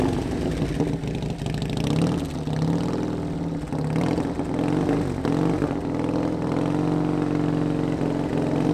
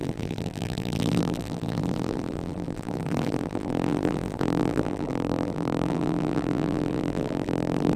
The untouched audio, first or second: first